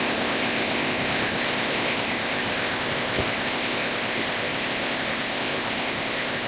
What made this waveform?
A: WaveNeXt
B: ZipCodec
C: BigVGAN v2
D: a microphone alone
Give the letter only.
B